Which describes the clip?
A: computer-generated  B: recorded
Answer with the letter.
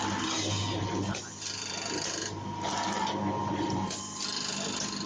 B